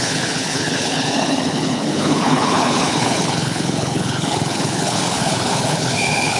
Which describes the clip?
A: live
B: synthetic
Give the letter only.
B